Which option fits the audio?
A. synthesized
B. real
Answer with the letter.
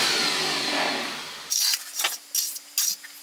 B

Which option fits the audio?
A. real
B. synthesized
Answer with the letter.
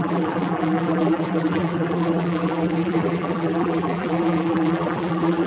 B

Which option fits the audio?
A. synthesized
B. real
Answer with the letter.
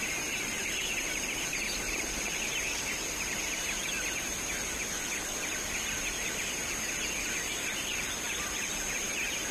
B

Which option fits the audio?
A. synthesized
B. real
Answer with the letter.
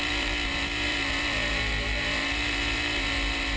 A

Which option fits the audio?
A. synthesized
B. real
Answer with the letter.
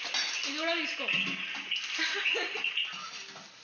B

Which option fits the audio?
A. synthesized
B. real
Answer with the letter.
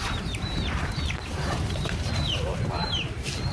A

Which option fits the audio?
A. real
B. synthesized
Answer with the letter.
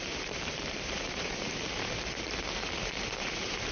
B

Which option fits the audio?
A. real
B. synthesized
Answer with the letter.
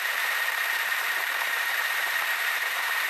B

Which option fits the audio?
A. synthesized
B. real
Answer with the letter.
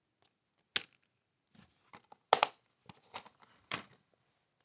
B